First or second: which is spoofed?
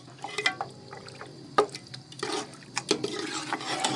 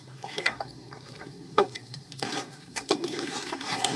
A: second